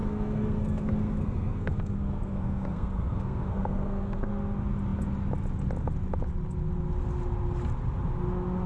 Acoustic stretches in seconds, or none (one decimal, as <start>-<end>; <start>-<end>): 4.3-8.7